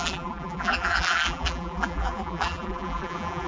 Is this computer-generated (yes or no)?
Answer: yes